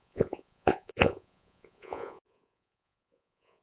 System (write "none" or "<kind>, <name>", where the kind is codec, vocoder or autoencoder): vocoder, Vocos